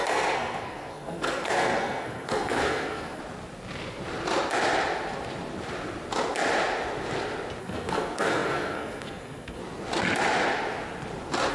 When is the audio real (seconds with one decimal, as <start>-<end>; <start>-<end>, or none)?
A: 3.2-7.6; 9.6-11.5